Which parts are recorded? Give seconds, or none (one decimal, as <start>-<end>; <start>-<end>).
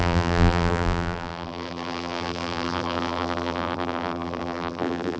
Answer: none